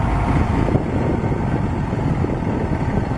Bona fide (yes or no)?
yes